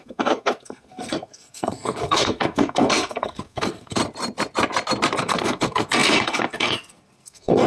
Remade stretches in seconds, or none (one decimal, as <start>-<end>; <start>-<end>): 0.0-4.0; 5.2-7.7